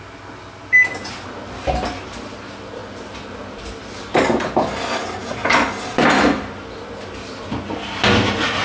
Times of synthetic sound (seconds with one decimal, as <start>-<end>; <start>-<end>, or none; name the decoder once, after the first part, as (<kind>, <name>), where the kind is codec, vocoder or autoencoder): none